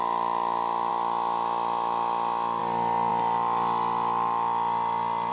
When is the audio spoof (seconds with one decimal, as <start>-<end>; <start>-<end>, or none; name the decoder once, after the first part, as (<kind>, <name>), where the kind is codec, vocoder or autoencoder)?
none